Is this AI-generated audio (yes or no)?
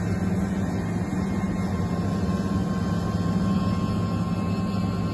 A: no